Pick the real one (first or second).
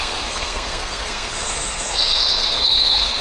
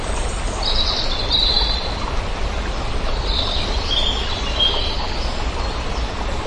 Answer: second